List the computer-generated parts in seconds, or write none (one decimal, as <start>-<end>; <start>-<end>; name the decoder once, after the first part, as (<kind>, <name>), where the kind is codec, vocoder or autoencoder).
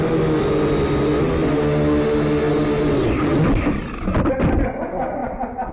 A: none